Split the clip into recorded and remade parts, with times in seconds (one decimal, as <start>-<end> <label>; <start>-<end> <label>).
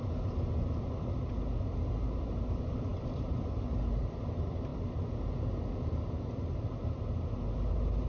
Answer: 0.0-8.1 recorded